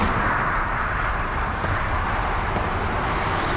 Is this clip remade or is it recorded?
remade